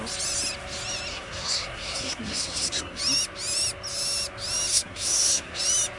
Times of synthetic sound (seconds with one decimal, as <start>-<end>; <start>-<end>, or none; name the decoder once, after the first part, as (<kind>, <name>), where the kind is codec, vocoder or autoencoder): 1.1-3.0 (codec, SNAC); 4.7-5.6